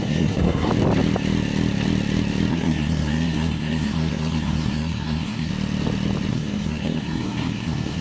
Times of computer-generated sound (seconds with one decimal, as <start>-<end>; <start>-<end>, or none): 0.0-0.7; 2.5-5.5; 6.3-8.0

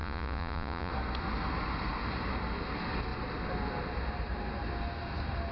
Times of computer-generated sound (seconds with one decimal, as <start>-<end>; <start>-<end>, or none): 0.0-0.9

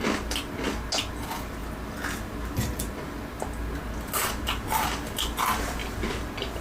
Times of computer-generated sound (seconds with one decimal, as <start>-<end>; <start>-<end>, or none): none

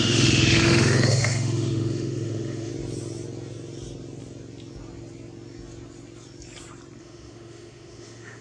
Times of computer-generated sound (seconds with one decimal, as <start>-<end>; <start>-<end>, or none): 0.0-2.7; 7.0-8.4

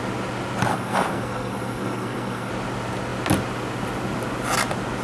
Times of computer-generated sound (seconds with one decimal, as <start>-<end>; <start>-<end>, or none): 0.7-2.5

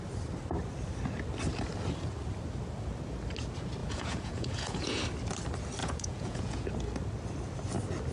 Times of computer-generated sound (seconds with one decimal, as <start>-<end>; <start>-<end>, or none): 3.8-5.0; 5.8-6.7

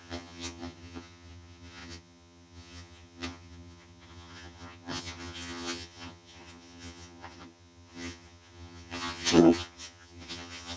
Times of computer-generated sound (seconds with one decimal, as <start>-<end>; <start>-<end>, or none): 0.0-10.8

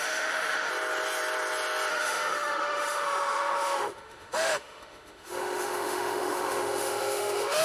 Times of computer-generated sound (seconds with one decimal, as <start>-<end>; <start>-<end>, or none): 0.0-0.7; 1.9-7.6